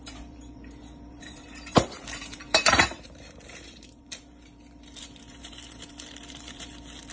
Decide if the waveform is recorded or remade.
remade